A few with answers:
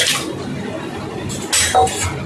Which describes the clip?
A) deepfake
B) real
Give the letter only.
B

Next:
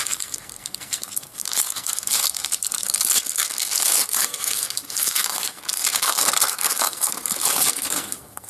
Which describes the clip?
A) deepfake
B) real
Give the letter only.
A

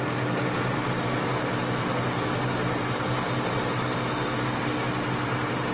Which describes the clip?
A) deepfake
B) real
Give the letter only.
B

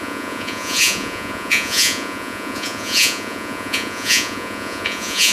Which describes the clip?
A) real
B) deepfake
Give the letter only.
B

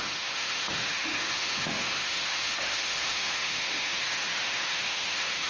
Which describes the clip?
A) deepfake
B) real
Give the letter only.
A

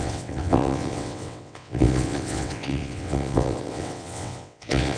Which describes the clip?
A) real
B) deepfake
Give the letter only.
B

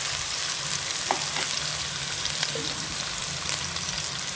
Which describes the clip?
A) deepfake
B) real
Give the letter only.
B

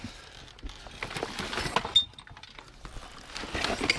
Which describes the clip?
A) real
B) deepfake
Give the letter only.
A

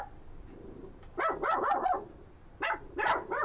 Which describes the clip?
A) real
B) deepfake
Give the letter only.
A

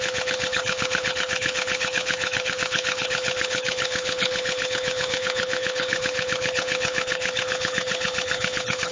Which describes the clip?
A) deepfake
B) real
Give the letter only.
A